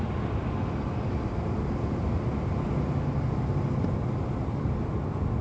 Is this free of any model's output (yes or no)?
yes